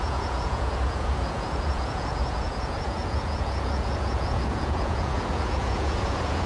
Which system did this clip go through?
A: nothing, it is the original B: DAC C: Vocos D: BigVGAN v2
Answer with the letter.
C